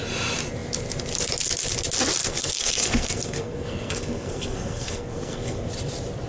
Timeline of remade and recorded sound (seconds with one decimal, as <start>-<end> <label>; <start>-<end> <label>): 0.0-2.2 recorded; 2.2-5.7 remade; 5.7-6.3 recorded